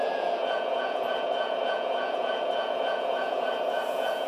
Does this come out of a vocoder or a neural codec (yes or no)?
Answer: yes